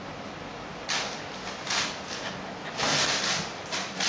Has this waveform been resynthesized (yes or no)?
no